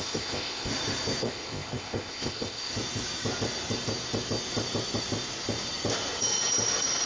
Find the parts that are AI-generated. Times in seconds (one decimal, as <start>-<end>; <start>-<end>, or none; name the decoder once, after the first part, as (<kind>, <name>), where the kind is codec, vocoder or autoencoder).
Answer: 0.0-0.7 (codec, ZipCodec); 1.2-2.7